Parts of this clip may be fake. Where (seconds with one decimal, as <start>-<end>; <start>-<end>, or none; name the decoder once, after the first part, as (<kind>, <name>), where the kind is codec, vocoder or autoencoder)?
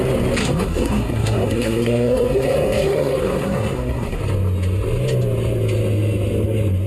0.4-4.2 (codec, SNAC)